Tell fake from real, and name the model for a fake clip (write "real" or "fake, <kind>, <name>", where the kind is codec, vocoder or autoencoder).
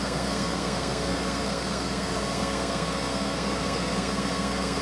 fake, codec, SNAC